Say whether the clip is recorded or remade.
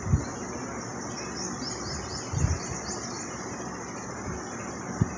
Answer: recorded